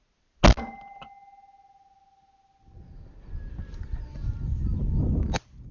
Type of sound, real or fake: real